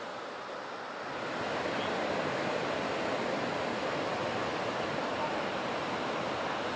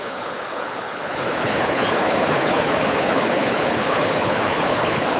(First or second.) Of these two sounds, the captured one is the first